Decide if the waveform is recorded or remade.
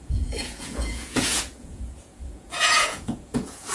remade